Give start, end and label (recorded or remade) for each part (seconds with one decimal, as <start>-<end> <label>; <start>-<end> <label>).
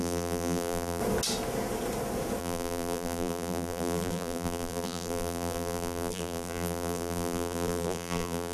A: 0.0-1.0 remade; 1.0-2.4 recorded; 2.4-8.5 remade